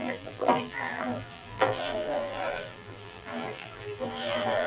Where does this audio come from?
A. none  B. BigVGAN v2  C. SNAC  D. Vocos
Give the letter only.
B